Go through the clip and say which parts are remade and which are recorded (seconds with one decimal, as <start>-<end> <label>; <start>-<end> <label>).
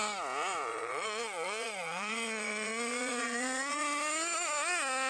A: 0.0-0.7 recorded; 0.7-3.8 remade; 3.8-5.1 recorded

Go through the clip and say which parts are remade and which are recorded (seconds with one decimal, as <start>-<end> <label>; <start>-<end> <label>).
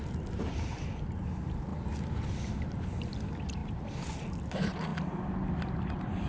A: 0.0-3.6 recorded; 3.6-4.2 remade; 4.2-4.9 recorded; 4.9-6.3 remade